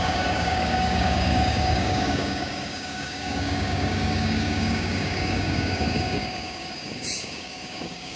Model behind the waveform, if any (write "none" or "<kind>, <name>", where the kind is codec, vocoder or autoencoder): codec, DAC